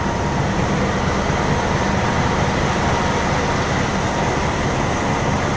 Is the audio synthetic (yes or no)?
no